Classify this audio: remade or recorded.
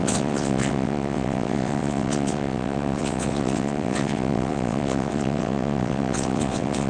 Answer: remade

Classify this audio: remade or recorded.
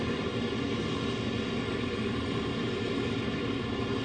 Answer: recorded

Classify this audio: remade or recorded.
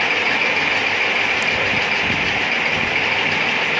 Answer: recorded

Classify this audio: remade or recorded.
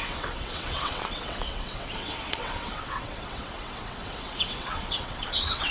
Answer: remade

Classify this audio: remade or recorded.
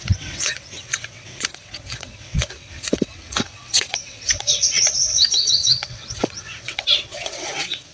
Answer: remade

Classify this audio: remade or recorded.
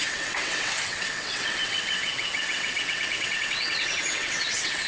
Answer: remade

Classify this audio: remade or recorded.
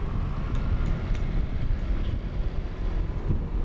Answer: recorded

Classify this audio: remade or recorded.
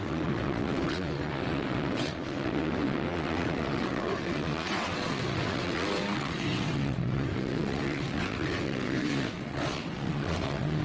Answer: remade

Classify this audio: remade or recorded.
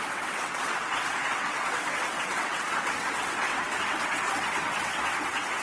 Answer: remade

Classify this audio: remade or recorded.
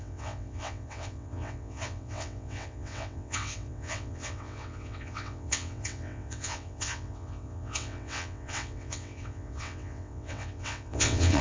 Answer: remade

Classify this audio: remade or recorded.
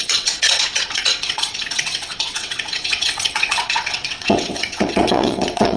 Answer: remade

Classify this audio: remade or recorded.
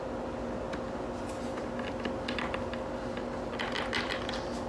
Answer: recorded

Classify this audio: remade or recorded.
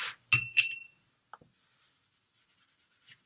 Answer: recorded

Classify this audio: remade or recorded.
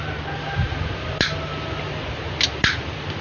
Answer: recorded